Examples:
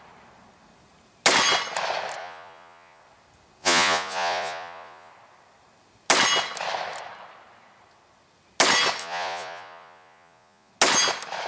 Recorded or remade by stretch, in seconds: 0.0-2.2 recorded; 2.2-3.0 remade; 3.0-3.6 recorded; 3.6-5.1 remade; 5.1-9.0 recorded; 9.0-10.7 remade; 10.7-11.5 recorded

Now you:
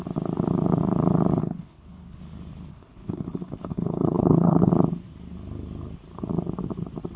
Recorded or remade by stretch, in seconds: 0.0-1.4 recorded; 1.4-2.2 remade; 2.2-2.7 recorded; 2.7-4.7 remade; 4.7-7.2 recorded

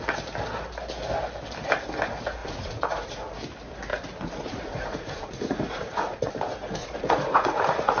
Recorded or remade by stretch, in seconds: 0.0-2.4 recorded; 2.4-3.2 remade; 3.2-3.9 recorded; 3.9-6.3 remade; 6.3-6.8 recorded; 6.8-8.0 remade

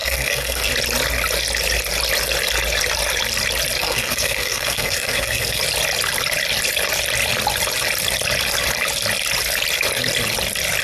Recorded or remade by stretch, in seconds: 0.0-0.7 remade; 0.7-3.8 recorded; 3.8-5.6 remade; 5.6-10.8 recorded

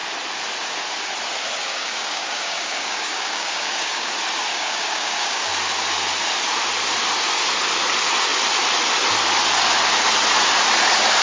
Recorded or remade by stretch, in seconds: 0.0-1.6 recorded; 1.6-4.1 remade; 4.1-4.5 recorded; 4.5-5.5 remade; 5.5-11.2 recorded

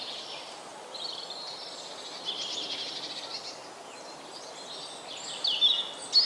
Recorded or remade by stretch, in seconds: 0.0-6.3 recorded

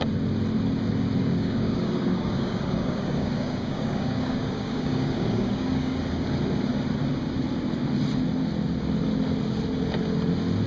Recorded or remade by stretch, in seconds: 0.0-1.2 recorded; 1.2-6.0 remade; 6.0-10.7 recorded